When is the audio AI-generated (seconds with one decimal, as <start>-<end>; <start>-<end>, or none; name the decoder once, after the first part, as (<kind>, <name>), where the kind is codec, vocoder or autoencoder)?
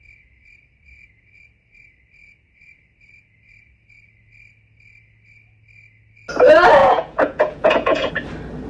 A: 6.8-8.1 (vocoder, Vocos)